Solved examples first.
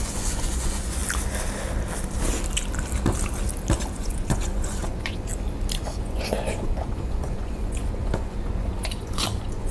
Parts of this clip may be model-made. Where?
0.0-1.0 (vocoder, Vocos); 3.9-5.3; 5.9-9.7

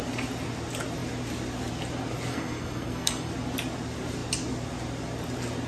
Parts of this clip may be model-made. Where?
2.3-3.3 (codec, SNAC)

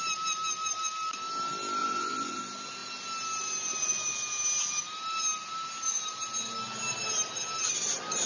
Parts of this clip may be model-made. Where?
1.8-2.4 (vocoder, Vocos)

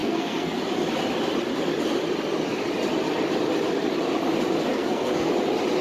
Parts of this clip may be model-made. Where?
0.0-0.6 (codec, SNAC); 4.7-5.3

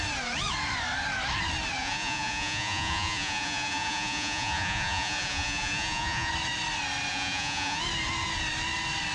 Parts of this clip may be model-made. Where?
1.8-6.3 (vocoder, Vocos); 7.1-7.8

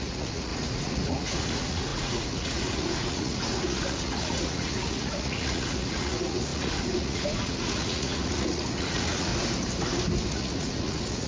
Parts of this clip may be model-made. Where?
0.0-9.3 (vocoder, Vocos); 10.3-11.3